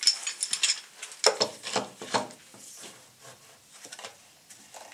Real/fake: real